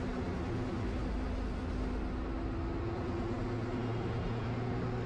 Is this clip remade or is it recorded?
recorded